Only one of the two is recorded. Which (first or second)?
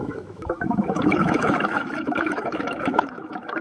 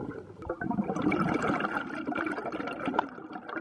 second